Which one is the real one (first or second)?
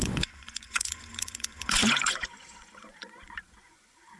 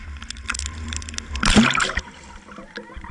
second